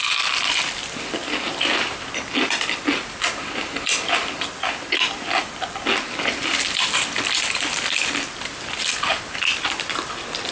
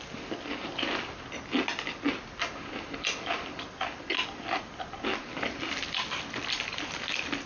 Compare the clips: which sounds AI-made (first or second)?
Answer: first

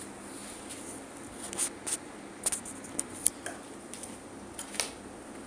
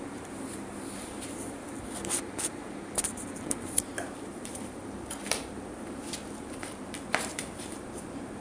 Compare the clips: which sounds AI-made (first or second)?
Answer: second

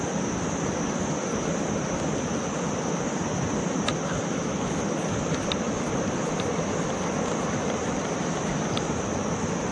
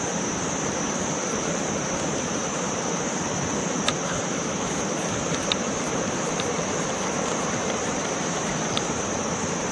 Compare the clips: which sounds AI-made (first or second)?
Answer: second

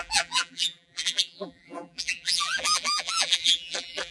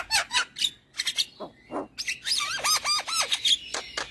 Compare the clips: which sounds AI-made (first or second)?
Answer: first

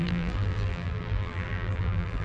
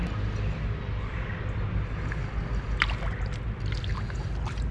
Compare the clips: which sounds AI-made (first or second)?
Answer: first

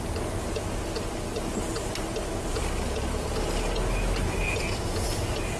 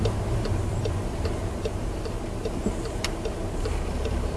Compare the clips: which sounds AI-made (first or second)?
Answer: second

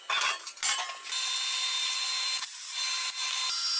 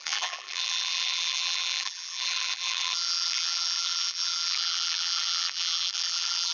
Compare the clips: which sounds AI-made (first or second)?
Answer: second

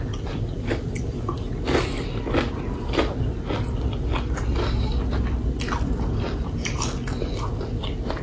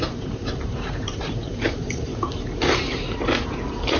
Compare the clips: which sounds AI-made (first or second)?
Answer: second